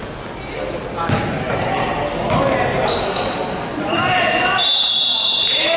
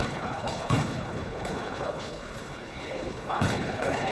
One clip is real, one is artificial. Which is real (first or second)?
first